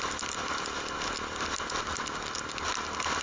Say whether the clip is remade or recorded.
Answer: recorded